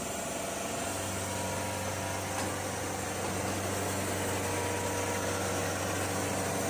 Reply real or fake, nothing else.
real